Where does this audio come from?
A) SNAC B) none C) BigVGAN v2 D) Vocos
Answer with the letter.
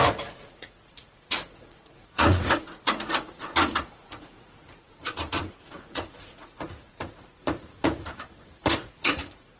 D